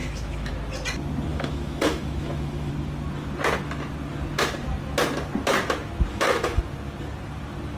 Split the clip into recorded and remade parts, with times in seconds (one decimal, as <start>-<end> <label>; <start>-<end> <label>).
0.0-0.5 remade; 0.5-1.3 recorded; 1.3-2.7 remade; 2.7-6.1 recorded; 6.1-6.6 remade; 6.6-7.8 recorded